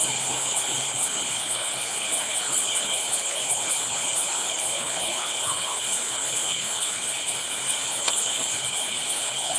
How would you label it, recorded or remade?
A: remade